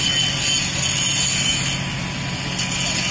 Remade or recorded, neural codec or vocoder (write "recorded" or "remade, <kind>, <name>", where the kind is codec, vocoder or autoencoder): recorded